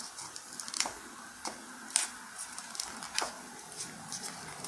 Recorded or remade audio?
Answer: remade